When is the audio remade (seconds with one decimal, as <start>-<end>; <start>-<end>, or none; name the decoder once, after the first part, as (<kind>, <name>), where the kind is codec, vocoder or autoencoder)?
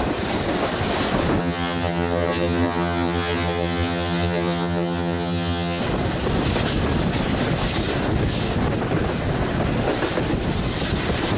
1.4-5.8 (vocoder, HiFi-GAN)